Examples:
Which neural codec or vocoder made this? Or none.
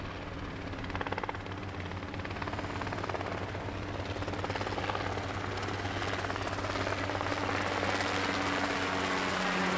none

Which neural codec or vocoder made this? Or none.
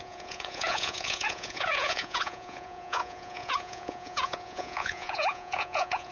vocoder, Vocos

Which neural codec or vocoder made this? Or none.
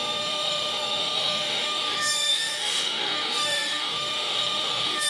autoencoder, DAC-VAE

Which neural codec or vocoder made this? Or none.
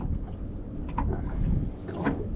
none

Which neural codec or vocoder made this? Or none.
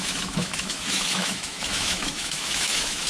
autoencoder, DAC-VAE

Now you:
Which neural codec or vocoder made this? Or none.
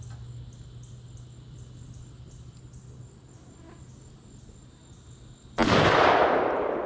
none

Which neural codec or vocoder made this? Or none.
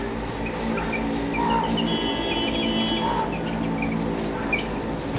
none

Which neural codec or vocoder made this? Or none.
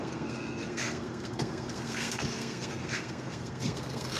codec, SNAC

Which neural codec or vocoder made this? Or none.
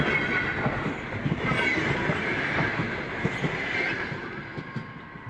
none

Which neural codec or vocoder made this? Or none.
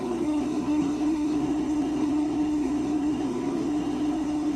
codec, SNAC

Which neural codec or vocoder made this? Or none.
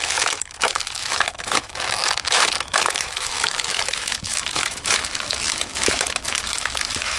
autoencoder, DAC-VAE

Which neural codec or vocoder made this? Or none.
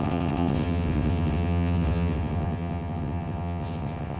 vocoder, WaveNeXt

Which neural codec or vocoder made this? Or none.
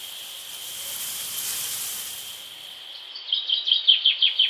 vocoder, BigVGAN v2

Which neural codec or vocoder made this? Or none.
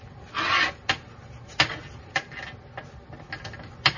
none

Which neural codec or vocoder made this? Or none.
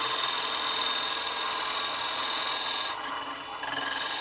none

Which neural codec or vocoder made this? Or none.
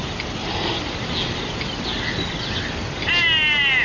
none